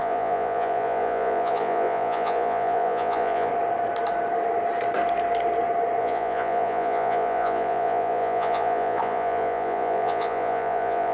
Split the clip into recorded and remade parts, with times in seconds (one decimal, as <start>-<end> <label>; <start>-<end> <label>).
0.0-3.5 remade; 3.5-6.0 recorded; 6.0-11.1 remade

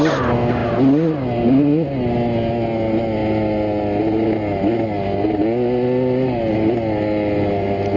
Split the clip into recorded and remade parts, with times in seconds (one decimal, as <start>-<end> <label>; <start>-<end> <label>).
0.0-8.0 recorded

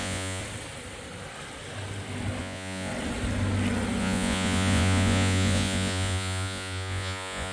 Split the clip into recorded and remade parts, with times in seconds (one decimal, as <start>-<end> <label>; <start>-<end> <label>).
0.0-0.4 remade; 0.4-2.4 recorded; 2.4-2.9 remade; 2.9-4.0 recorded; 4.0-7.5 remade

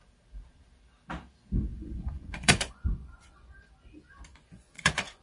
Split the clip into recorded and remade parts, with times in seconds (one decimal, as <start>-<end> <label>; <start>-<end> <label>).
0.0-1.7 recorded; 1.7-3.7 remade; 3.7-4.3 recorded; 4.3-5.2 remade

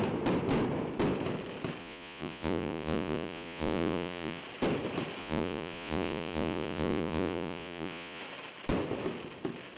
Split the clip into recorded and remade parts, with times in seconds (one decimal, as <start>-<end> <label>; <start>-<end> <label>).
0.0-1.8 recorded; 1.8-4.4 remade; 4.4-5.2 recorded; 5.2-8.2 remade; 8.2-9.8 recorded

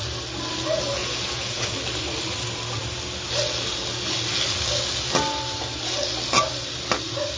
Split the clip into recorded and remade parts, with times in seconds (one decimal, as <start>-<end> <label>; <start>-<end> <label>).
0.0-1.0 recorded; 1.0-1.7 remade; 1.7-7.4 recorded

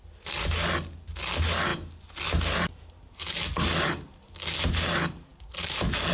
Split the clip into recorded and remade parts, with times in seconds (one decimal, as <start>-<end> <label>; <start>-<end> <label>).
0.0-6.1 recorded